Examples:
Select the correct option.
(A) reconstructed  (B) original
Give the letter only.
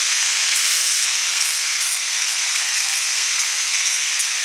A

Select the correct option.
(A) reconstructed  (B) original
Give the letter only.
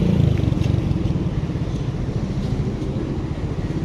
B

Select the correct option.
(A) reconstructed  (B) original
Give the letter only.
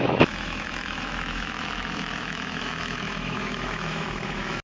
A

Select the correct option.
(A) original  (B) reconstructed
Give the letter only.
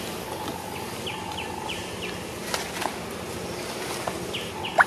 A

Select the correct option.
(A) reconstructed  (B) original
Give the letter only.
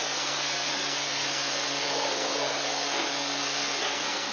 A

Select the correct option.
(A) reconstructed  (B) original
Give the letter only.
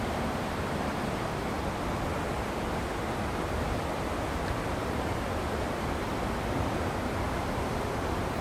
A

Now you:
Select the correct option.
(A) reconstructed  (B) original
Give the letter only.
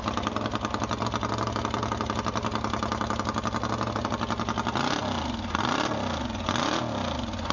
B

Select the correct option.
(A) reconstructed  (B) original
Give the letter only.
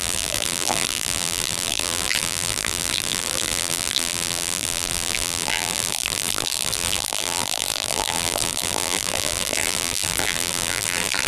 A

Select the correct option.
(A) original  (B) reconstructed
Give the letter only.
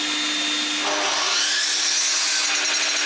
A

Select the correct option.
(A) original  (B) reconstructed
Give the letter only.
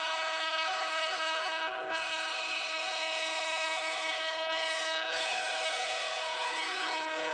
B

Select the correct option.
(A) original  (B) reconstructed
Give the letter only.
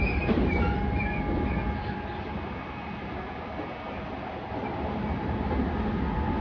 A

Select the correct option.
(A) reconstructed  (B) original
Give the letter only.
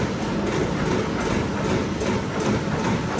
B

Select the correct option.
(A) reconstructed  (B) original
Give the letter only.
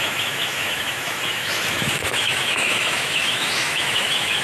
A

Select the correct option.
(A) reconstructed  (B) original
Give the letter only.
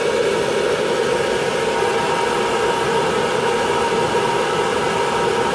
B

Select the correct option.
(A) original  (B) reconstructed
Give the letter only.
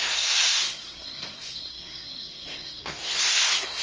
B